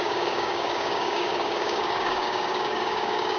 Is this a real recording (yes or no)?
no